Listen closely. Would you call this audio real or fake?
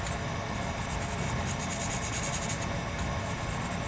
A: real